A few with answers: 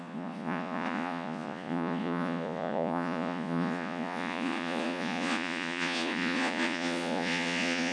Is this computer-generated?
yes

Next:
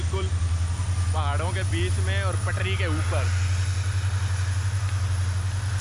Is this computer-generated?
no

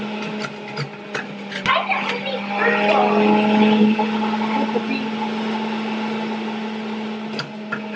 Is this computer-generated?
no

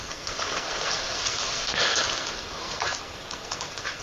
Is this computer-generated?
yes